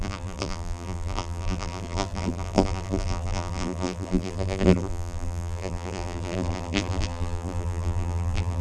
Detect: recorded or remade remade